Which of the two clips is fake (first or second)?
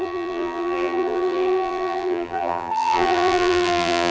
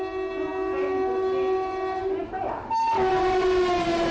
first